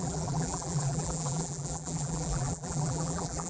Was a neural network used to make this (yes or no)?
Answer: yes